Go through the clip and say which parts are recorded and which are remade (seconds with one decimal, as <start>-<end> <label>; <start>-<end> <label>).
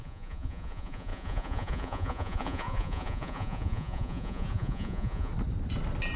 0.0-5.3 remade; 5.3-6.2 recorded